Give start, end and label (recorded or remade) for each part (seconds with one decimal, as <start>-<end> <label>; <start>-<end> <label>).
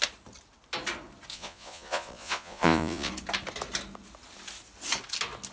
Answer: 0.0-1.3 recorded; 1.3-3.1 remade; 3.1-5.5 recorded